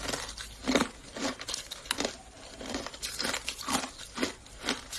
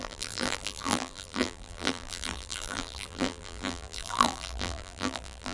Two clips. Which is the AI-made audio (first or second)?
second